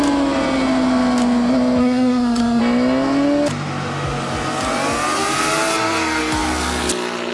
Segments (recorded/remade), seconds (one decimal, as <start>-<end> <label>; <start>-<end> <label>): 0.0-1.8 recorded; 1.8-2.6 remade; 2.6-7.3 recorded